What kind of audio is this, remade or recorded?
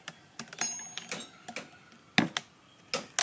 recorded